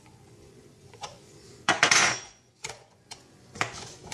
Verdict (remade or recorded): remade